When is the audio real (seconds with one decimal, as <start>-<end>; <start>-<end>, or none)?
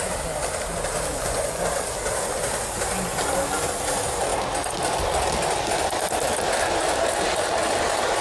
0.0-1.1; 1.6-8.2